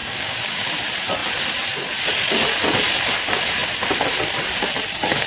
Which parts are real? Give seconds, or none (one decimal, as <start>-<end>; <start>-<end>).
0.7-5.3